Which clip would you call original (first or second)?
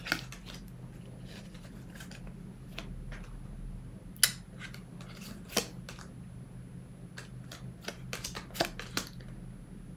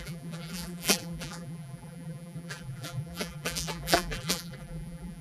first